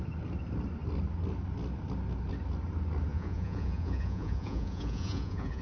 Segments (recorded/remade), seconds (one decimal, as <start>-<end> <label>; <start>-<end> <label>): 0.0-3.1 recorded; 3.1-5.6 remade